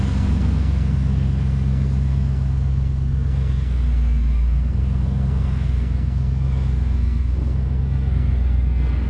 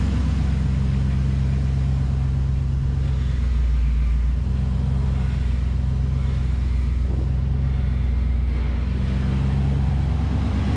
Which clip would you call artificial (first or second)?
first